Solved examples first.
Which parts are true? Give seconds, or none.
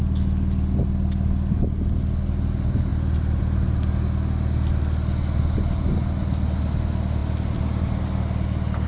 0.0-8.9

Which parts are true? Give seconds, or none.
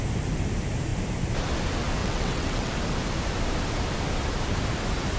0.0-2.0; 2.7-5.2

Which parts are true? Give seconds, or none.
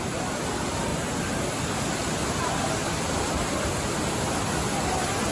0.0-5.3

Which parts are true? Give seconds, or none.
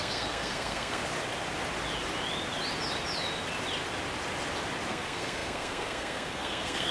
1.0-4.9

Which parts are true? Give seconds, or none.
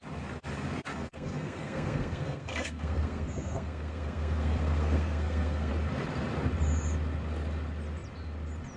0.0-0.9; 5.7-8.8